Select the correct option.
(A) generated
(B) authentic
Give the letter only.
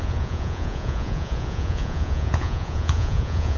A